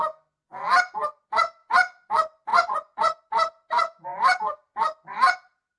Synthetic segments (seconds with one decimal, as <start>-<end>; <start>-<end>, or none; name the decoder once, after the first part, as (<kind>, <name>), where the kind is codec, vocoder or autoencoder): 1.6-2.1 (vocoder, Vocos); 2.5-3.2